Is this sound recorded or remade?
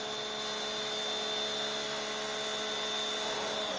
recorded